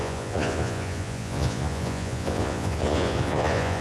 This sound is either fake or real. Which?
fake